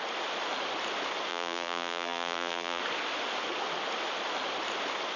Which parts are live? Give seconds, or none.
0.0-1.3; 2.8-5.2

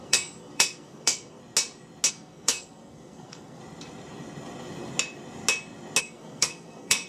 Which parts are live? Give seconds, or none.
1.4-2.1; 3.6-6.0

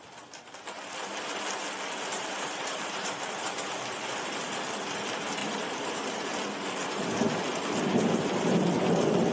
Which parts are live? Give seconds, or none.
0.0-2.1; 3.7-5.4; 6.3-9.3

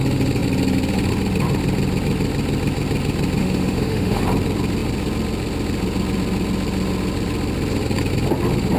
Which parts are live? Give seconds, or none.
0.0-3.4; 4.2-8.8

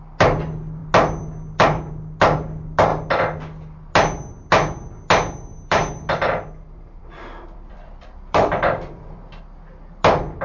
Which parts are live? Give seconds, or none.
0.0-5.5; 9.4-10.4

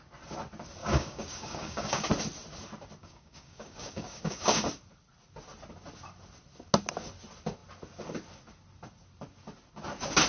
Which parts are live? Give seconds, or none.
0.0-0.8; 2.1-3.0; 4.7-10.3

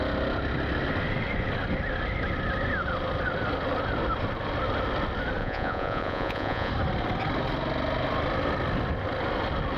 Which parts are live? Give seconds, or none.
0.0-5.4; 6.7-9.8

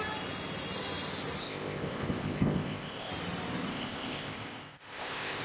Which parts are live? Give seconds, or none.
0.0-1.4; 3.1-3.7